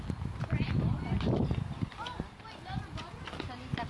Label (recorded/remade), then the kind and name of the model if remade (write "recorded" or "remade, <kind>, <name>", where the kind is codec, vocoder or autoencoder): recorded